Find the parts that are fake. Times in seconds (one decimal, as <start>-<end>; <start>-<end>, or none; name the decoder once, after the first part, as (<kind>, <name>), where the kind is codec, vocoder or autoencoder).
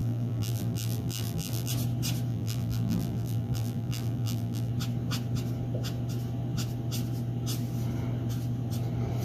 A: 0.0-1.7 (vocoder, BigVGAN v2); 2.3-4.7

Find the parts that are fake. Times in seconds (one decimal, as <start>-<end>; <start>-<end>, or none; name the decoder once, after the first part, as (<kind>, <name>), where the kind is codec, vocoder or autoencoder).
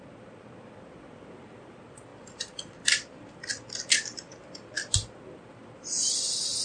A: 0.0-6.6 (vocoder, BigVGAN v2)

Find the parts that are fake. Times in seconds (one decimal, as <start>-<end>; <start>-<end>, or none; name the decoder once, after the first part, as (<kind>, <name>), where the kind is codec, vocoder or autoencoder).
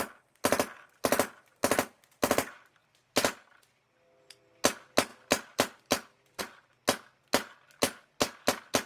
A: 2.8-4.4 (vocoder, BigVGAN v2); 5.1-6.4